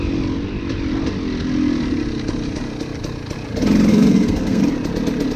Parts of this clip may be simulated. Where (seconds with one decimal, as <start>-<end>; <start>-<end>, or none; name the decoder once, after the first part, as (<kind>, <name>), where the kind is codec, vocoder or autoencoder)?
3.9-4.6 (codec, SNAC)